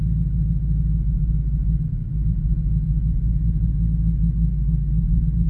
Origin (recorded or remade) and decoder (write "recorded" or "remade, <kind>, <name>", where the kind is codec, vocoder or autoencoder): recorded